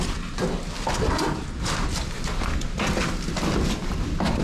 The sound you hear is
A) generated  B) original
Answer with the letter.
B